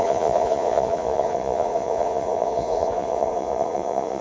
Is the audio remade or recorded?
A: remade